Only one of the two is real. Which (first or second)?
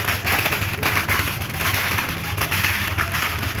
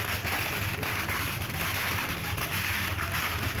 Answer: first